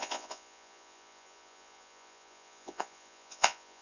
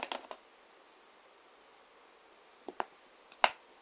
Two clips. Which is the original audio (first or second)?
second